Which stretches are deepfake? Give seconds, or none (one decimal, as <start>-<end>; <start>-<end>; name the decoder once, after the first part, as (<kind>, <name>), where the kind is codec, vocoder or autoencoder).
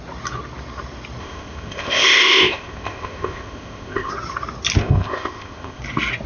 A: 1.2-4.1 (codec, ZipCodec); 4.8-5.8